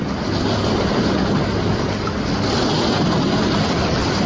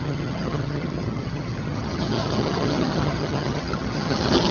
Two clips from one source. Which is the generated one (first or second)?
second